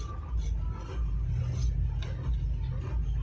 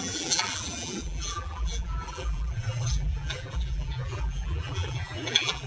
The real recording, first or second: first